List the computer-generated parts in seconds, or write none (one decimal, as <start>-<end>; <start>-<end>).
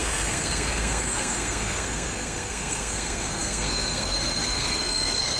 0.0-5.4